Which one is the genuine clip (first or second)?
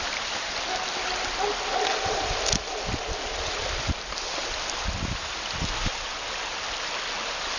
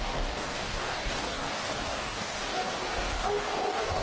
first